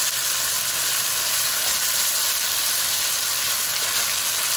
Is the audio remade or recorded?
recorded